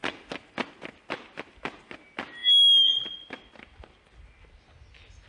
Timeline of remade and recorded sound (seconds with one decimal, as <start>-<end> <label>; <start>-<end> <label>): 0.0-5.3 recorded